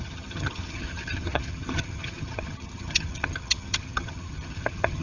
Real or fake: fake